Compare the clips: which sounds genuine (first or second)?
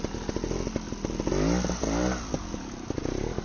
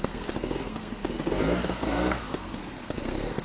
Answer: first